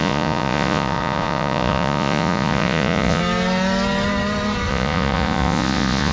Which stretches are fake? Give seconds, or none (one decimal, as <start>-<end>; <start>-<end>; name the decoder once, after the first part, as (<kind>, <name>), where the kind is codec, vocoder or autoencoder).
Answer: 0.0-3.2 (vocoder, Vocos); 4.7-6.1